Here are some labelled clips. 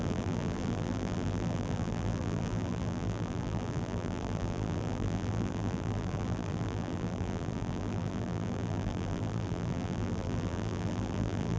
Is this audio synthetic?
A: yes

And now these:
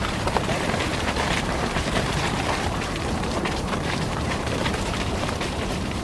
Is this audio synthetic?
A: yes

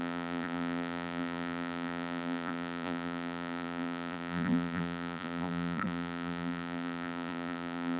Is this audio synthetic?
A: yes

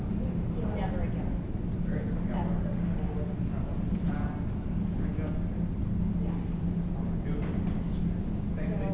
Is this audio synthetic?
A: no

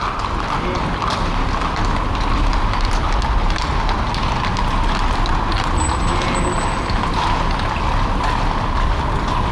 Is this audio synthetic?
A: no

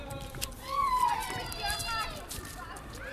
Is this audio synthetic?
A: yes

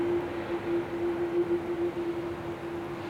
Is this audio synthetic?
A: no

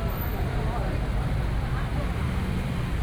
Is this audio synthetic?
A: no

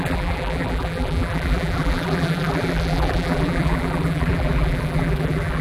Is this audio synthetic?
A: yes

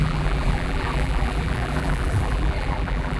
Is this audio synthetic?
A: yes